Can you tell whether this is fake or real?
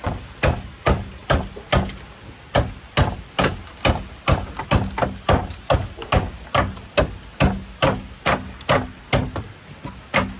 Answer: real